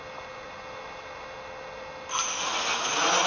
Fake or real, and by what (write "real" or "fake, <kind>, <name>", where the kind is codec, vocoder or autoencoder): real